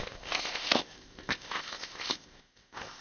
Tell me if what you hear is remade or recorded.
remade